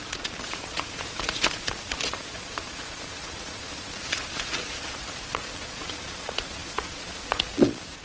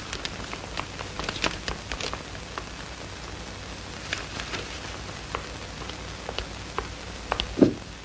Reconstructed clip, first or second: first